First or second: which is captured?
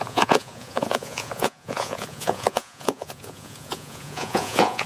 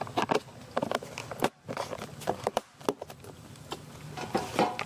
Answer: second